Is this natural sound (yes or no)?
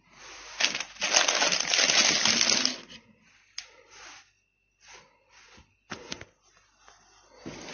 yes